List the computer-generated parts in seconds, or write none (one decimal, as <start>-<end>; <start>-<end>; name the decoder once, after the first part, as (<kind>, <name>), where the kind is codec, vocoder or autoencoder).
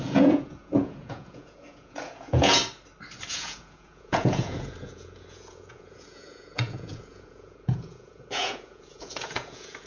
0.0-2.6 (vocoder, Vocos); 3.3-9.9